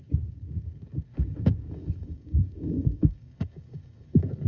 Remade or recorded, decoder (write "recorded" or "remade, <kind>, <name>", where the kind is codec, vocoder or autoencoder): remade, codec, DAC